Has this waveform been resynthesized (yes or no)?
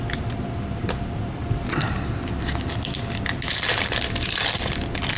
no